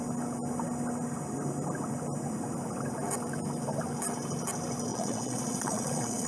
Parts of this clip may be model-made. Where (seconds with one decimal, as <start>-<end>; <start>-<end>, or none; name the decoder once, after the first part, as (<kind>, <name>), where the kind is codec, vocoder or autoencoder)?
4.9-6.3 (vocoder, Vocos)

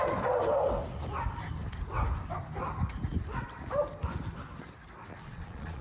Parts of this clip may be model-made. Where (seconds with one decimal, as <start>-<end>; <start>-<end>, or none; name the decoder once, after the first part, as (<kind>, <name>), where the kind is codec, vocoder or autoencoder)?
5.1-5.8 (vocoder, Vocos)

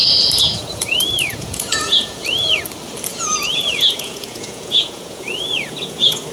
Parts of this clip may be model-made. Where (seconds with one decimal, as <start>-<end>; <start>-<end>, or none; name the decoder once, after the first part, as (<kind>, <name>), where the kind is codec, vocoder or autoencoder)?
0.0-2.6 (vocoder, Vocos); 3.1-6.3

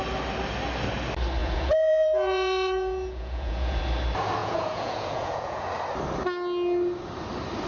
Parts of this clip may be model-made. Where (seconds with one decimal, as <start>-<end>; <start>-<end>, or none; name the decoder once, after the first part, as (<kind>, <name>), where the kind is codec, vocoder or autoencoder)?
1.4-3.8 (vocoder, Vocos); 4.4-5.7

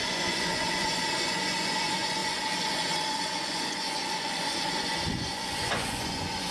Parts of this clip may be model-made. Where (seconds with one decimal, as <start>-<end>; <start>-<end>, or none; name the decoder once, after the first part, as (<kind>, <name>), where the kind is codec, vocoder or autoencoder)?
0.0-6.5 (vocoder, Vocos)

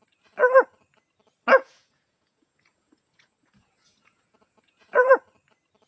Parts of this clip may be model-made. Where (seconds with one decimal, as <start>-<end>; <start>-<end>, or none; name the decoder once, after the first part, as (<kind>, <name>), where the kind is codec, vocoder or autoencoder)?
1.6-5.1 (vocoder, Vocos)